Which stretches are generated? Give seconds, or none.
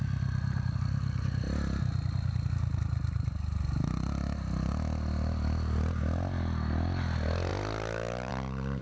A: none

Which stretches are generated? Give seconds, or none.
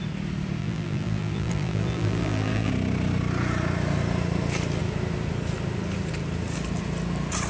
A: 0.6-2.7 (vocoder, BigVGAN v2)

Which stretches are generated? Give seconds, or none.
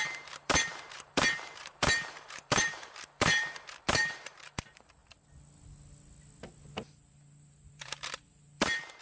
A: 0.0-5.0 (vocoder, BigVGAN v2); 6.9-9.0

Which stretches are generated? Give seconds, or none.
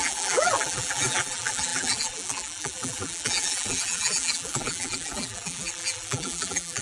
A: 0.0-6.8 (vocoder, BigVGAN v2)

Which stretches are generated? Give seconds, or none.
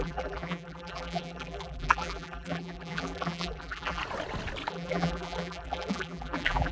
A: 0.0-4.0 (vocoder, BigVGAN v2); 4.7-6.7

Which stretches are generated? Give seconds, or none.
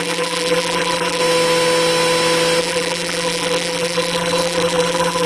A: 0.0-1.2 (vocoder, BigVGAN v2); 2.6-5.3